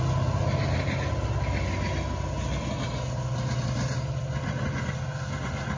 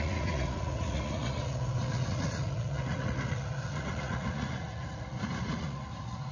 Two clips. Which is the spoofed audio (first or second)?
second